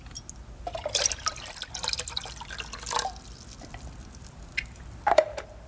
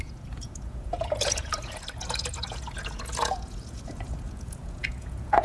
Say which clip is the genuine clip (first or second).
first